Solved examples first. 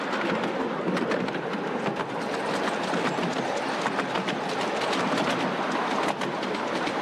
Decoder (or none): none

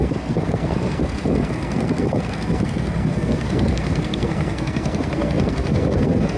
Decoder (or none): codec, SNAC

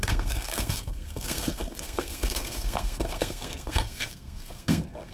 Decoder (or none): codec, SNAC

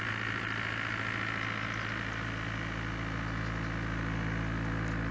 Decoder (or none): none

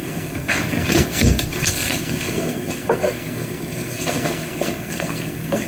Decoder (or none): codec, SNAC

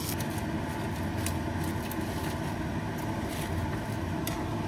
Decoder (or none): none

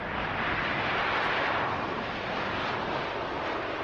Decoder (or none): none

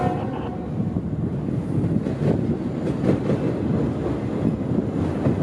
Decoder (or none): none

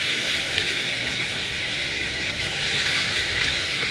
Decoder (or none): codec, SNAC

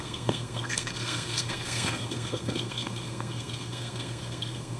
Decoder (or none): codec, SNAC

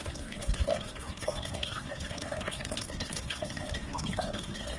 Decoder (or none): codec, SNAC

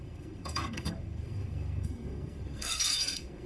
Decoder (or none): codec, SNAC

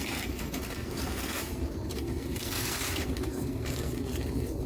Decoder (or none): codec, SNAC